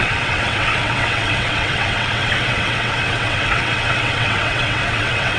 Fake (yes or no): yes